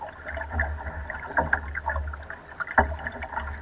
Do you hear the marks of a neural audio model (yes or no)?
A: no